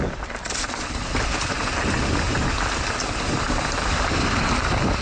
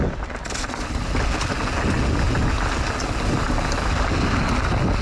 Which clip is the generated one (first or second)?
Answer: first